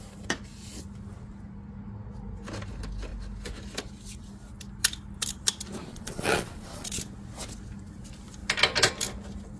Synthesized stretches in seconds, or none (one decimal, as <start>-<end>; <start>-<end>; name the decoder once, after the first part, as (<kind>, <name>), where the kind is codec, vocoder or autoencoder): 5.9-7.0 (vocoder, Vocos)